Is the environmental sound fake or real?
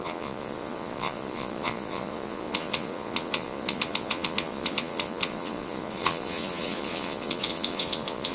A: fake